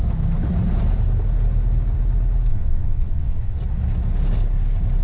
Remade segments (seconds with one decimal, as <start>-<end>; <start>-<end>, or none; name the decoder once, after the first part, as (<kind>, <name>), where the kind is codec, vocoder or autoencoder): 2.5-3.6 (vocoder, WaveNeXt)